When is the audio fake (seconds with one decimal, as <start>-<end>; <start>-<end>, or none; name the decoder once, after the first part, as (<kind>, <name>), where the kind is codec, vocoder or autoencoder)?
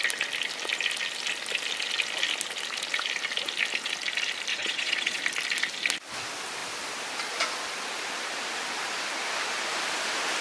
4.5-5.2 (vocoder, Vocos)